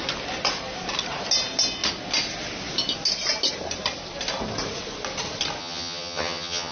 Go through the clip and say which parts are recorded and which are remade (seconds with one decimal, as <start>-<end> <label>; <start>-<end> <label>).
0.0-5.6 recorded; 5.6-6.7 remade